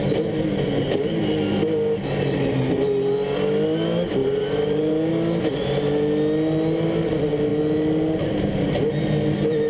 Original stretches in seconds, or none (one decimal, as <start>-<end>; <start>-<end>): 0.0-4.2; 4.9-9.7